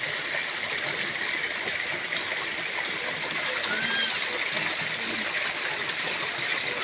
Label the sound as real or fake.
real